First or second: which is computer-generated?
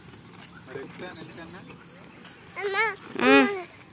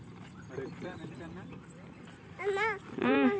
second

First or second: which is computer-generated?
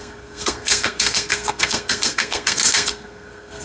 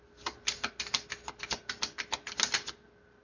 first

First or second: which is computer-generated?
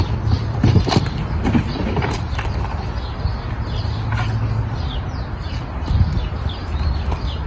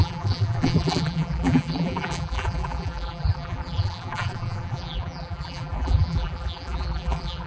second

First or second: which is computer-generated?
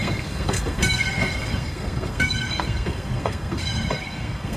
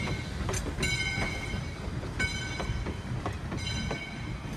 first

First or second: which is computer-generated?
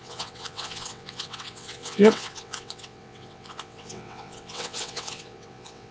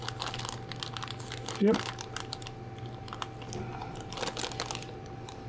first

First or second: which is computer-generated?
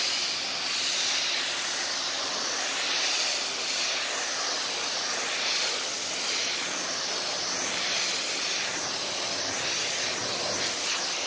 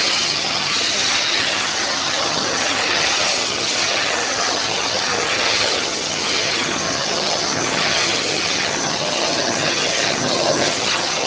second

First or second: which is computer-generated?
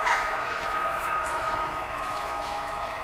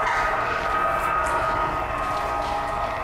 first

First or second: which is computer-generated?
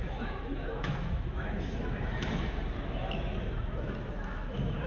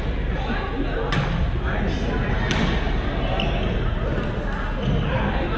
first